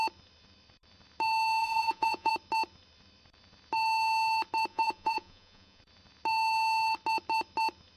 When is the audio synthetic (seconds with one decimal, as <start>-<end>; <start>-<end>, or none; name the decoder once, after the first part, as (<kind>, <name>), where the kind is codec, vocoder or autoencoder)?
1.6-2.3 (vocoder, Vocos); 4.7-5.8